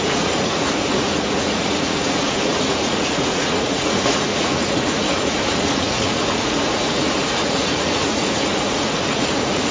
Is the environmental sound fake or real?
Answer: fake